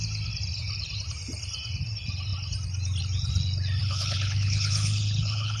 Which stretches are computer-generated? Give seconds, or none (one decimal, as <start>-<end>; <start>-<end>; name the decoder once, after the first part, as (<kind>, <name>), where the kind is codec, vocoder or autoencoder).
3.8-5.6 (codec, HILCodec)